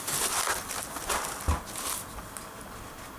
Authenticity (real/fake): real